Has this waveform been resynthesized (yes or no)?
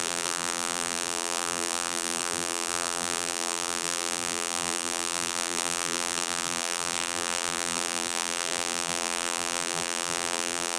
yes